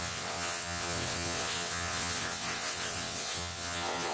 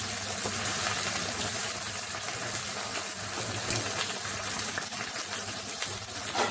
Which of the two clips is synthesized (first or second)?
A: first